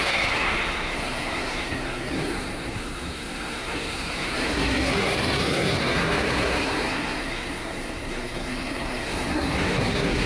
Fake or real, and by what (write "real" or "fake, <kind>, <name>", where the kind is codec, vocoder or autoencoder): fake, codec, SNAC